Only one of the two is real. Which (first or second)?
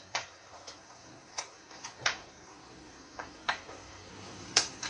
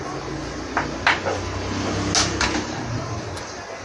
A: second